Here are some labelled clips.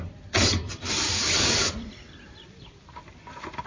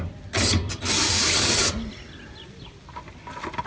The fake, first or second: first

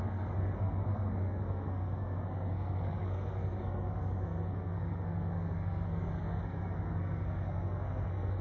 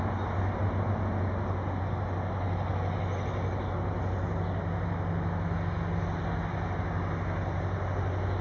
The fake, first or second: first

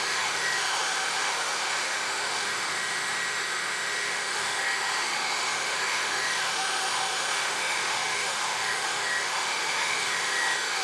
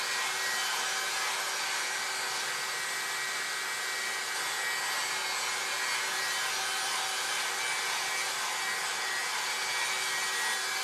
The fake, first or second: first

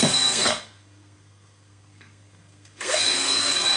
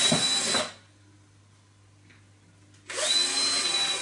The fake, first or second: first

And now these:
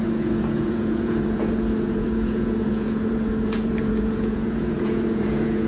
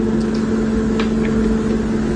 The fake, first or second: first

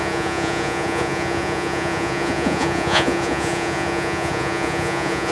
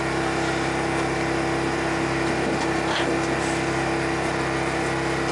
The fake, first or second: first